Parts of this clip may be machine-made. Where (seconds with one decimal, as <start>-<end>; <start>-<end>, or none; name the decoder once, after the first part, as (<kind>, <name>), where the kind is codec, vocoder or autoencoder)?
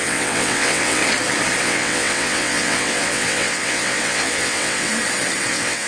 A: 0.0-1.0 (vocoder, WaveNeXt); 1.6-4.9; 5.5-5.9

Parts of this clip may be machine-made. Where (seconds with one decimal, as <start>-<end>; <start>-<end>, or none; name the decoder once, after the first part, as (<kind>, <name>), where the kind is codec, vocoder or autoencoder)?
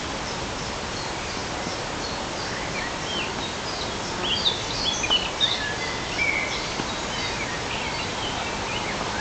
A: none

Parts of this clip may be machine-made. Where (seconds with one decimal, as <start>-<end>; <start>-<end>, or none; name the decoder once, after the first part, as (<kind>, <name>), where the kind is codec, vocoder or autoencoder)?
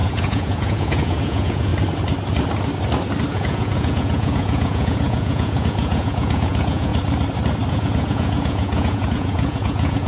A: 0.0-1.7 (vocoder, Vocos); 3.3-6.9; 7.7-10.1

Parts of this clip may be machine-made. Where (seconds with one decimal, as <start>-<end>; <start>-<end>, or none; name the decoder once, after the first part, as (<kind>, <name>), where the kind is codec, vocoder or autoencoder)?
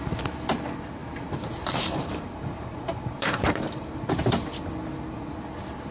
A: 1.0-4.5 (vocoder, BigVGAN v2)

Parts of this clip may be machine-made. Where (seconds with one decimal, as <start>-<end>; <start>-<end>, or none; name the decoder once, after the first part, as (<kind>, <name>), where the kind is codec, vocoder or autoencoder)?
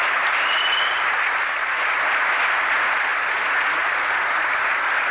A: none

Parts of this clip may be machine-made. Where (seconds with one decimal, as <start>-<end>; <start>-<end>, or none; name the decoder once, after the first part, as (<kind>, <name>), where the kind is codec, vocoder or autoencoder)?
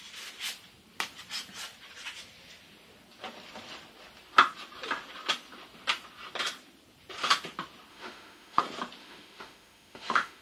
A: 7.9-8.6 (autoencoder, DAC-VAE); 9.0-10.4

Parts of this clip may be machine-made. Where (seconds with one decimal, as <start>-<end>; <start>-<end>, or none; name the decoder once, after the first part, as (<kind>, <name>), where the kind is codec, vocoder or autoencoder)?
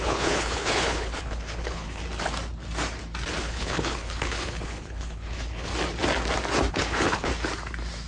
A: 0.0-2.0 (codec, HILCodec); 3.4-5.7; 6.7-7.3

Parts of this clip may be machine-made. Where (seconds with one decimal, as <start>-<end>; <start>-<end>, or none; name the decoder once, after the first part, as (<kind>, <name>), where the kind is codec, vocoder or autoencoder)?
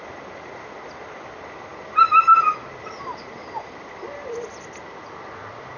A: none